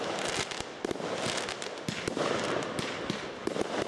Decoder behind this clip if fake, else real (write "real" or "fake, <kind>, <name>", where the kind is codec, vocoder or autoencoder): real